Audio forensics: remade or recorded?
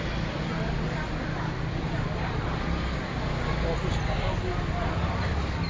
recorded